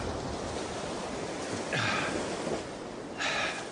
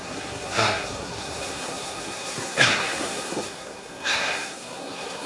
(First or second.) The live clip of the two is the first